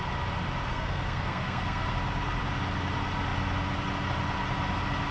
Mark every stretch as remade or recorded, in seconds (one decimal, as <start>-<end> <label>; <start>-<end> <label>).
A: 0.0-0.7 recorded; 0.7-1.9 remade; 1.9-5.1 recorded